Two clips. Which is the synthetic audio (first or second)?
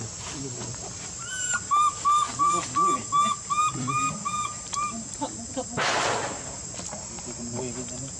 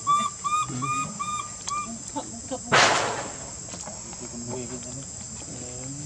first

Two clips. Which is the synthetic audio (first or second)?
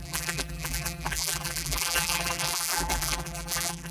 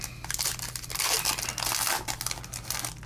first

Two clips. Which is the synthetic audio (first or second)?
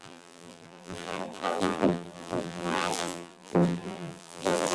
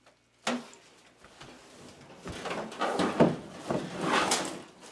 first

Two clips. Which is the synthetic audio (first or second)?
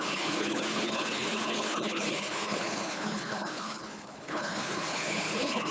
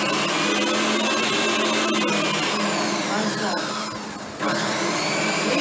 first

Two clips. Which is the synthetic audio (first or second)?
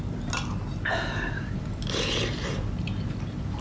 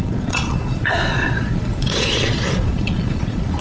second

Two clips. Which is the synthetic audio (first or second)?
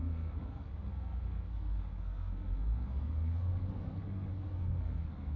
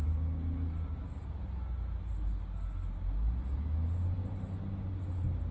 first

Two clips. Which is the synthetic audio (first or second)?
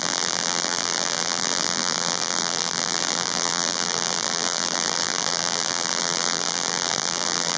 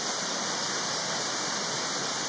first